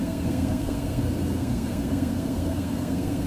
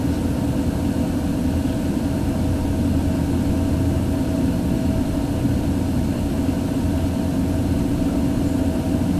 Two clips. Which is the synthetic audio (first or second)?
first